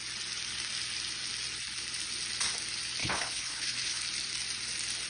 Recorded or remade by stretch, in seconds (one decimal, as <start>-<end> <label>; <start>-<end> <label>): 0.0-3.0 recorded; 3.0-4.0 remade; 4.0-5.1 recorded